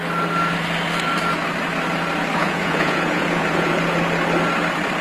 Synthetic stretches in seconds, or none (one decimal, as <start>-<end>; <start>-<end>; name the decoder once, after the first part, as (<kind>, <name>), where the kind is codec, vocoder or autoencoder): 2.4-3.7 (vocoder, Vocos)